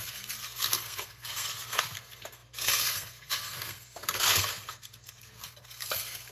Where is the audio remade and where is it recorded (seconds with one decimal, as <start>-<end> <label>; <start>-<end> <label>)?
0.0-6.3 remade